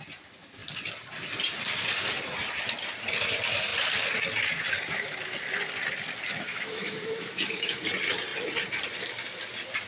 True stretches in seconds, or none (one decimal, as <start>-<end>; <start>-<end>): 0.0-6.5; 7.8-9.9